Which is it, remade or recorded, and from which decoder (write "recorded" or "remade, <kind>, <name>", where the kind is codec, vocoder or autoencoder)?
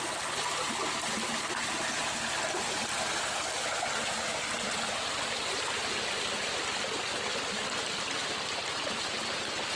recorded